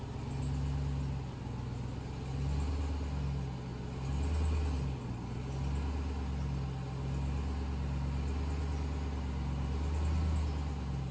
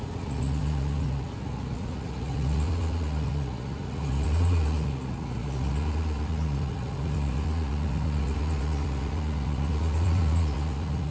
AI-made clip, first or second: second